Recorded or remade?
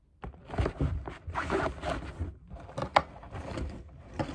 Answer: recorded